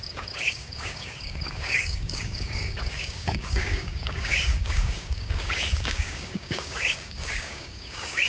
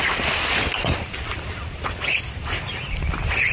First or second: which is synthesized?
first